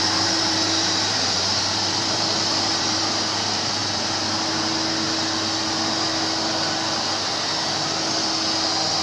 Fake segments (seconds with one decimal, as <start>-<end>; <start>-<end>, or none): 0.0-3.8